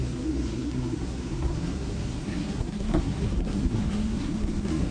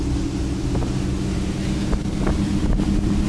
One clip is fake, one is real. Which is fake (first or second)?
first